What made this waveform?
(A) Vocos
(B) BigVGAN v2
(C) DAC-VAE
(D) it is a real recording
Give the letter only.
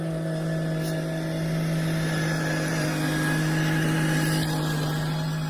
D